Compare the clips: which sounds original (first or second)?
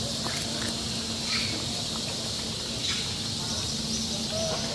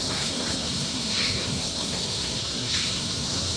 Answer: first